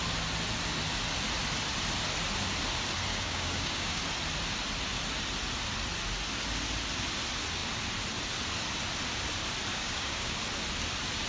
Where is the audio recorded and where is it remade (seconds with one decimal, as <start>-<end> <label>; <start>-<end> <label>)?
0.0-3.1 recorded; 3.1-4.0 remade; 4.0-9.7 recorded; 9.7-10.4 remade; 10.4-11.3 recorded